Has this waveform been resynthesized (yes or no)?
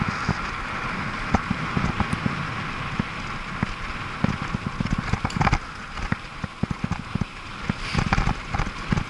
no